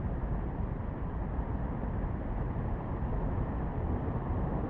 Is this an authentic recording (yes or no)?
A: yes